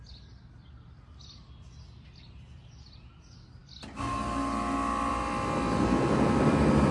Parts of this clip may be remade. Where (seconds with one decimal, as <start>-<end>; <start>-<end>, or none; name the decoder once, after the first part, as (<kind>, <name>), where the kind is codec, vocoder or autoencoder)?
none